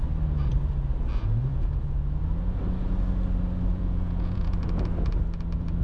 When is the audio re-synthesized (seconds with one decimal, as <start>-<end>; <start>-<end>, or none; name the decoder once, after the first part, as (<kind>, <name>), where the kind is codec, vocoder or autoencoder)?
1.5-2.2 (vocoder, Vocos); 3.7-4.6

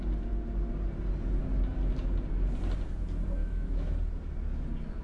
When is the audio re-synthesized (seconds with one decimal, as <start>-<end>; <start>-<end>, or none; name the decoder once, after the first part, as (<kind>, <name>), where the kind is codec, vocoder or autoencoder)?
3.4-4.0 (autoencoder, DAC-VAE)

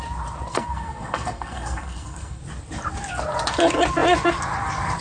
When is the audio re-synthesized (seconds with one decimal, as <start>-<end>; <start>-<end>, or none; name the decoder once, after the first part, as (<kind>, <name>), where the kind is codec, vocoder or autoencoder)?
0.5-2.4 (codec, SNAC)